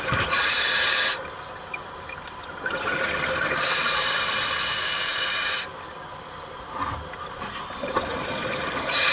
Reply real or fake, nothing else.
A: real